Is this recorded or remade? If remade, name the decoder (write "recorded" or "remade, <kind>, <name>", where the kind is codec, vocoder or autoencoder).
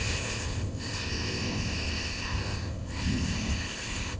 remade, codec, ZipCodec